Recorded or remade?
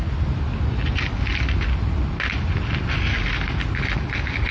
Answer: recorded